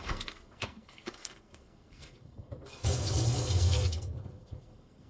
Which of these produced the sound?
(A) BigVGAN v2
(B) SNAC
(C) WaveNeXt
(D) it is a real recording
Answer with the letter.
B